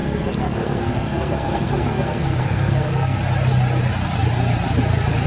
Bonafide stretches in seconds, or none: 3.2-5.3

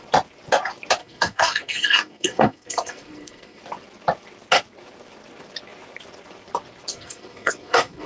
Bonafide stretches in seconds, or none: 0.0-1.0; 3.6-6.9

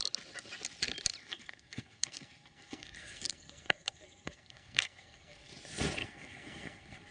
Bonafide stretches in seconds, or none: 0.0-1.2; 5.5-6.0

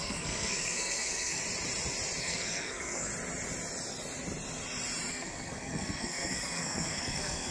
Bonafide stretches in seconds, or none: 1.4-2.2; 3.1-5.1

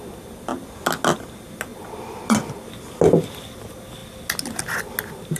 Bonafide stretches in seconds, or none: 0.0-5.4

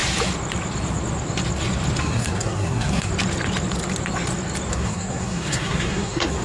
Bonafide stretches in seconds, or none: 0.0-2.0; 3.1-4.7

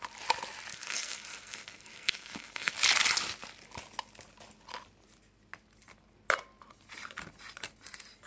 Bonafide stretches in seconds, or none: 0.0-0.7; 2.7-8.3